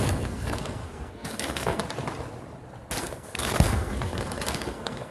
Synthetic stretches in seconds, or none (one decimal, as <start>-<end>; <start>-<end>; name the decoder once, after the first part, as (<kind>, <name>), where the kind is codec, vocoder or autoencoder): 0.0-1.8 (codec, SNAC); 3.0-5.1